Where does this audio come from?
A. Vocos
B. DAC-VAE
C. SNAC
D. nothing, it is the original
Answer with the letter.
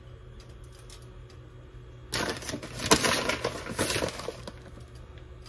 D